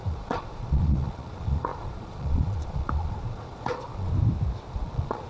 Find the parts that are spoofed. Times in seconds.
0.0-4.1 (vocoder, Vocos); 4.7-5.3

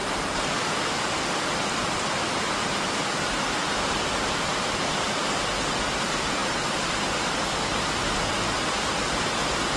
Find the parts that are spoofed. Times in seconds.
none

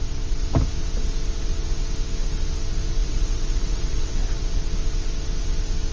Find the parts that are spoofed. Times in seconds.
3.0-4.1 (vocoder, WaveNeXt)